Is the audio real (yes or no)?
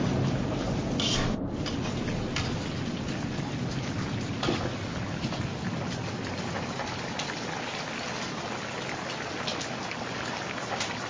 yes